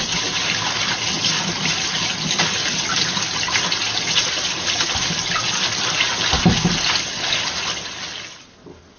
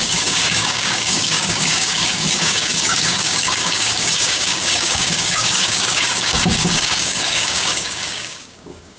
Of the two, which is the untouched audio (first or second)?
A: first